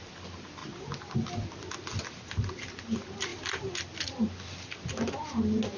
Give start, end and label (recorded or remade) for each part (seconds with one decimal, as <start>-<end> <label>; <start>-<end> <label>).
0.0-5.8 recorded